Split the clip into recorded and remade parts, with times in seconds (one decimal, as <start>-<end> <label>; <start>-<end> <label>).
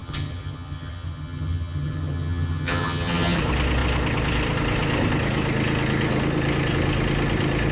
0.0-3.4 remade; 3.4-7.7 recorded